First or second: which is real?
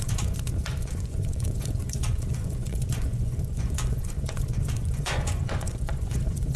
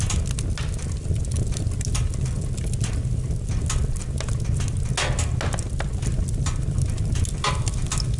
second